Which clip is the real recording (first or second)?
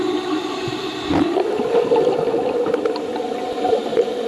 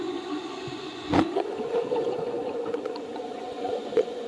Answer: first